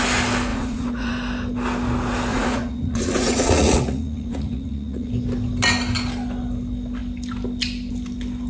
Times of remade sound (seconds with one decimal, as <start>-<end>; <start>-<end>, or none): 0.5-1.1; 2.3-5.1